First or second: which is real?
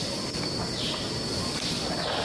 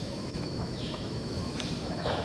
first